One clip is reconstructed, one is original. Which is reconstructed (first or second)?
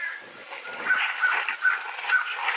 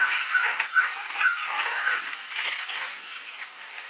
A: second